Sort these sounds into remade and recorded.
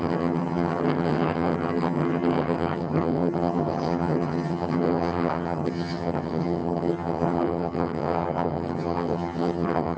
remade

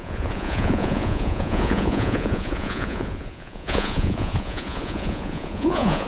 remade